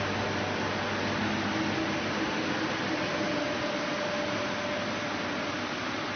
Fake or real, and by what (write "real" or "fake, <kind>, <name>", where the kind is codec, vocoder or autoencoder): real